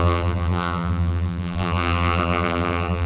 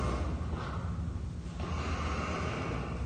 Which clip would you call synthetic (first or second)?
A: first